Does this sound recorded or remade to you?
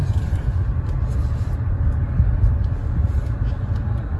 recorded